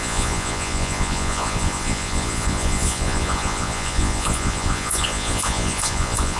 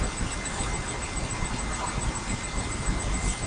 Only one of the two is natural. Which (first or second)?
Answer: second